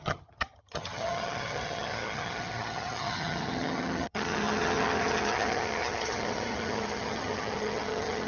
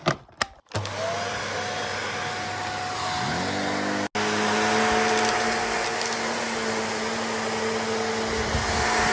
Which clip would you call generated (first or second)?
first